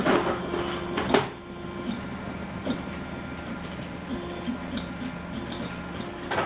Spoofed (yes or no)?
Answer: no